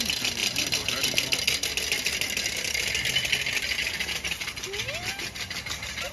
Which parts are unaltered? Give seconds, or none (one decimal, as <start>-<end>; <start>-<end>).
0.0-6.1